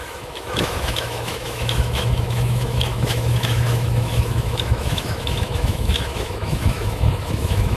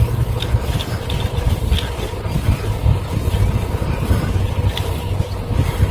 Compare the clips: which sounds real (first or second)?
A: second